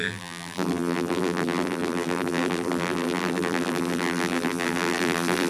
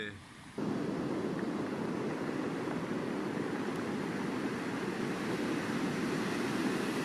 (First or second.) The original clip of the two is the second